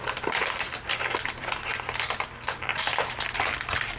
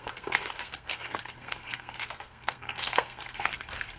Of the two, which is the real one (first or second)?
first